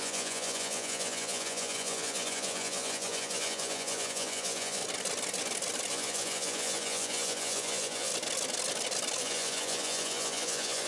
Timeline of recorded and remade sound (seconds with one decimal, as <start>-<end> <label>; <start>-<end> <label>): 0.0-4.8 remade; 4.8-5.9 recorded; 5.9-8.1 remade; 8.1-9.2 recorded; 9.2-10.9 remade